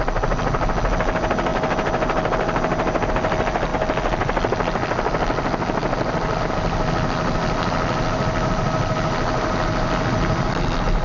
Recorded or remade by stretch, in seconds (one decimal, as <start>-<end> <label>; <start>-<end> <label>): 0.0-11.0 recorded

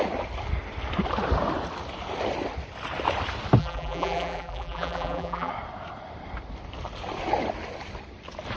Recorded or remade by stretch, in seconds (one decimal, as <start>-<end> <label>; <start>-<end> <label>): 0.0-3.6 recorded; 3.6-5.5 remade; 5.5-8.6 recorded

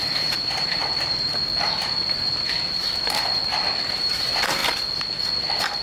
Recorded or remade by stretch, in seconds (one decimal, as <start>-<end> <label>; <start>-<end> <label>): 0.0-1.5 remade; 1.5-2.0 recorded; 2.0-3.4 remade; 3.4-4.0 recorded; 4.0-4.6 remade; 4.6-5.3 recorded; 5.3-5.8 remade

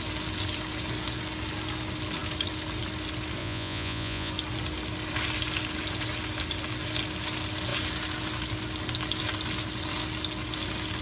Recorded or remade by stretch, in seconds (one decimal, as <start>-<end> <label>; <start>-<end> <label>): 0.0-3.4 recorded; 3.4-4.3 remade; 4.3-11.0 recorded